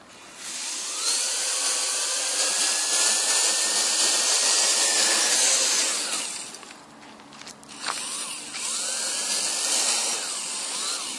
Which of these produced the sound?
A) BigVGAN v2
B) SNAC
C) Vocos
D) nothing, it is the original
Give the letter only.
D